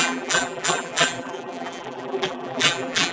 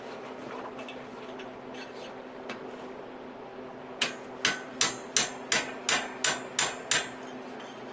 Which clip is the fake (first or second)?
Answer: first